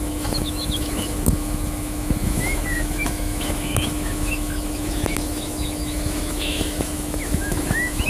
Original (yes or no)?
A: no